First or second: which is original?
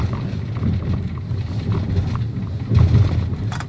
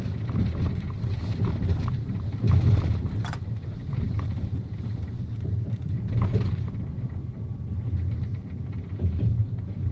first